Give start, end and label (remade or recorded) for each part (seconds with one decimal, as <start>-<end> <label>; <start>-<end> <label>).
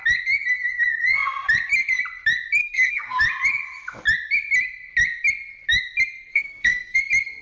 0.0-2.6 recorded; 2.6-3.2 remade; 3.2-6.3 recorded; 6.3-7.0 remade; 7.0-7.4 recorded